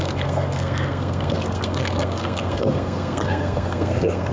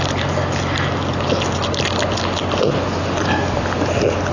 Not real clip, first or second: first